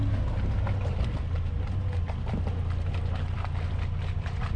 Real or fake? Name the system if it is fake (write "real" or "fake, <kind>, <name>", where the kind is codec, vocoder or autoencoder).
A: real